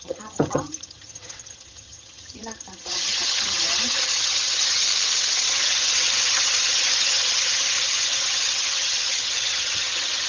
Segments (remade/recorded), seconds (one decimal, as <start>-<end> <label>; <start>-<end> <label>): 0.0-4.8 remade; 4.8-5.5 recorded; 5.5-10.3 remade